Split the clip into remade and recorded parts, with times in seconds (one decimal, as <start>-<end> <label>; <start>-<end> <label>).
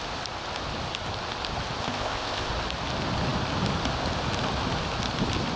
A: 0.0-1.8 recorded; 1.8-2.5 remade; 2.5-5.6 recorded